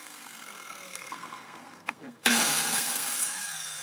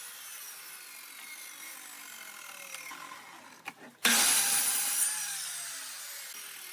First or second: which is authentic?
second